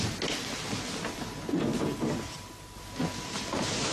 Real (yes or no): yes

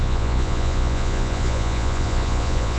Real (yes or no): no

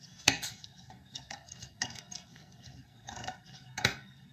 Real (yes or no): no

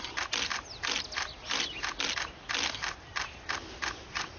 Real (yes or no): yes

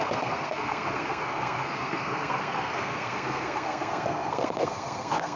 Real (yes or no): no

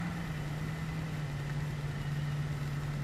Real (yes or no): yes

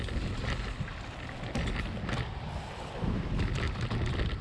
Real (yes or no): yes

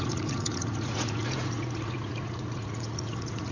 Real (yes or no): no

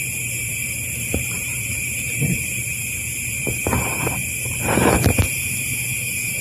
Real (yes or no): no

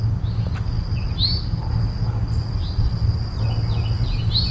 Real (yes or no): yes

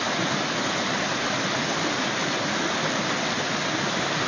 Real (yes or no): yes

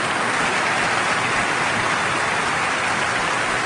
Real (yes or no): yes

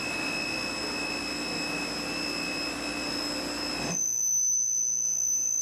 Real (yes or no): yes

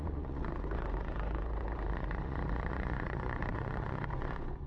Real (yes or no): no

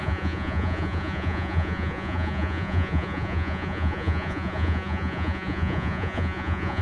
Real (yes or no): no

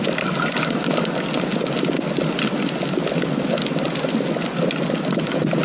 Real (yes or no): yes